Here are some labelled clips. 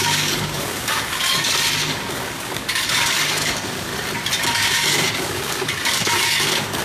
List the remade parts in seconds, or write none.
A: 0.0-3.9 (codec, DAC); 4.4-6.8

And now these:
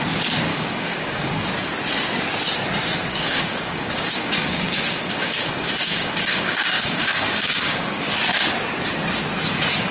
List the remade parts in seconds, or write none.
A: 0.5-1.3 (codec, DAC); 3.1-8.0